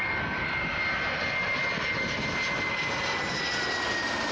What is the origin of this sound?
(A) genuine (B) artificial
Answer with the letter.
A